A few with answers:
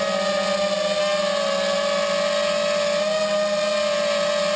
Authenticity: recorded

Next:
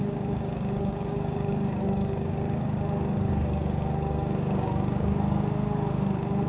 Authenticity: remade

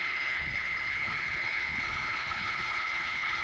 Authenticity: remade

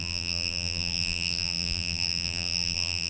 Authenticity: remade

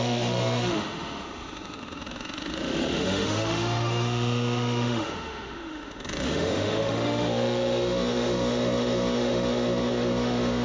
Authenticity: remade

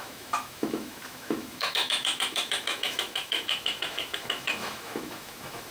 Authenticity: remade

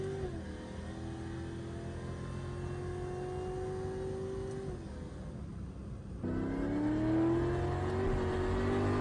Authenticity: recorded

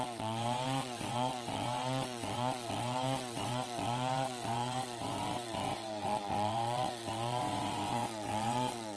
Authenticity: remade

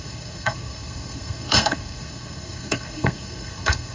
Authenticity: remade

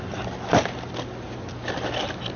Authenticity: recorded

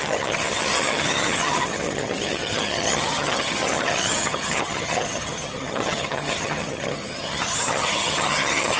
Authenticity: remade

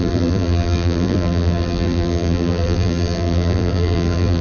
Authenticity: remade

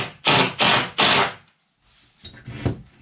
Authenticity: recorded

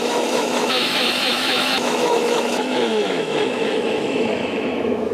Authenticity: remade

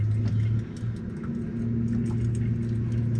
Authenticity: recorded